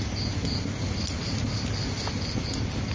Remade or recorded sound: recorded